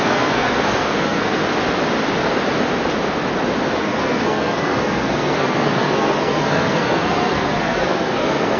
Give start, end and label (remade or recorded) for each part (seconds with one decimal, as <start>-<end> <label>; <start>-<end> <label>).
0.0-1.4 remade; 1.4-3.8 recorded; 3.8-8.6 remade